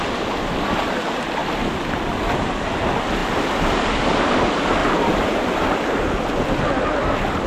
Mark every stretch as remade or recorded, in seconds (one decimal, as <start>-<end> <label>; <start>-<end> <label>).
0.0-4.8 recorded; 4.8-6.0 remade; 6.0-7.5 recorded